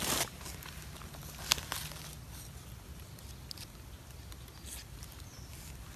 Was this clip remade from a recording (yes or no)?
no